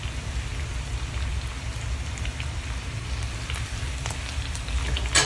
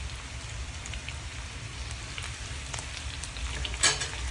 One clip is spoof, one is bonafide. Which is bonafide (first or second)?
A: first